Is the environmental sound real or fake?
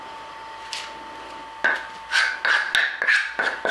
real